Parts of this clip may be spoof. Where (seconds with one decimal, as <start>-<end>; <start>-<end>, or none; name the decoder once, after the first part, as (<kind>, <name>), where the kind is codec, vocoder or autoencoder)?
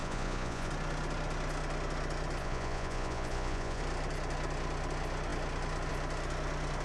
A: 0.0-0.7 (vocoder, Vocos); 2.4-3.8